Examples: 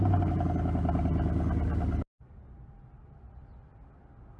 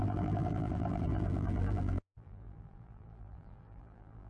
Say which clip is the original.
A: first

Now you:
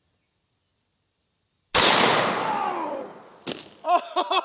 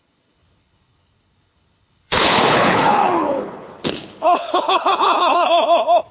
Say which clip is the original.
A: first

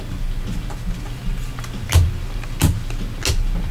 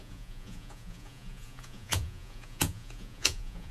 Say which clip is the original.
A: first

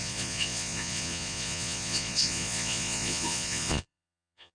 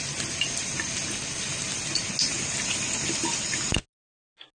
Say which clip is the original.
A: second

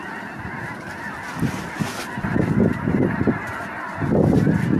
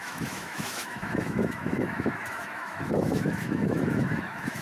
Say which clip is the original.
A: first